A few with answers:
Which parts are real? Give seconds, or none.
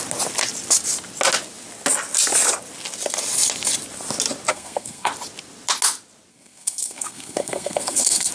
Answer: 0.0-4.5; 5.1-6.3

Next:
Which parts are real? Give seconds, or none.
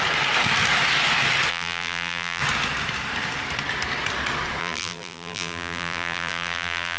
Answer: 0.0-1.5; 2.4-4.6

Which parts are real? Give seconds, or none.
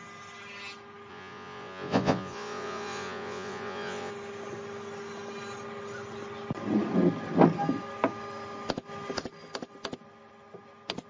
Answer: 0.0-1.1; 4.1-11.1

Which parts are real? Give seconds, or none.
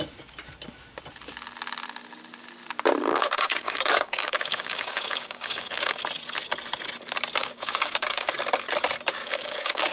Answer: 0.0-3.1; 6.0-7.4; 8.3-9.2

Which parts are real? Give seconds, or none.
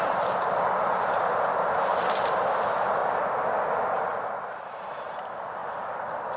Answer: 3.0-3.8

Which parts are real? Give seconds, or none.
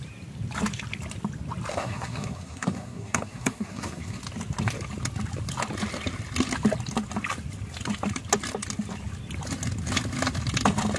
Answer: 0.0-1.7; 4.2-11.0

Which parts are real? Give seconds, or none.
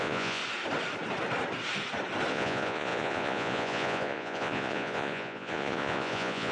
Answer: 0.4-2.3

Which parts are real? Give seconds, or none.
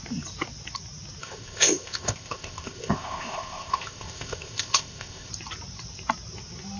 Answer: 0.0-1.2; 5.3-6.8